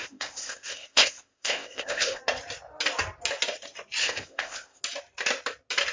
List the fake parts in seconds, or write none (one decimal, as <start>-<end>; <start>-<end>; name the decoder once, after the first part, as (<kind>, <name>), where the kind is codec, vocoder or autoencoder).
0.0-2.2 (codec, ZipCodec); 4.0-4.8